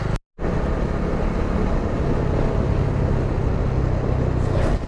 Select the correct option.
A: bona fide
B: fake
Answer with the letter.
A